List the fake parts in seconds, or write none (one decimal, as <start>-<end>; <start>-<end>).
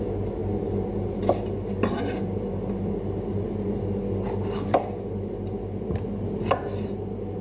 none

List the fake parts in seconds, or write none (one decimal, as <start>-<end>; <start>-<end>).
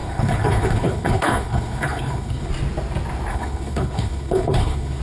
0.0-2.5; 3.3-5.0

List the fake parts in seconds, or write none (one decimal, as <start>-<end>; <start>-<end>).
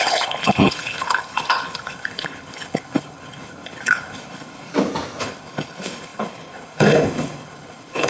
0.0-4.7; 5.2-8.1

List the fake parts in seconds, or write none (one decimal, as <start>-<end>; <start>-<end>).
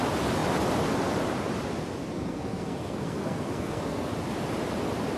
2.0-4.1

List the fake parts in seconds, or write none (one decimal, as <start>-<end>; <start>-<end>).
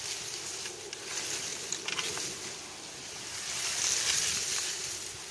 none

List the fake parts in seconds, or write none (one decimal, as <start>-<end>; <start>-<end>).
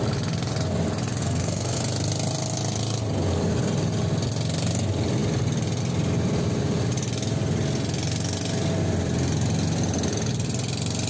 1.2-1.8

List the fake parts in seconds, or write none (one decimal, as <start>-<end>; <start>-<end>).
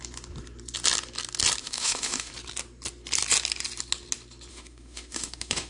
1.6-2.3; 4.5-5.7